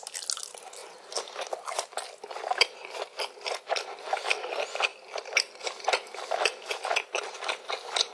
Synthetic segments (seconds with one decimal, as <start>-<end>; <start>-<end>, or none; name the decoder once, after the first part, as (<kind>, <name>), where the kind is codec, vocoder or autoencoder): none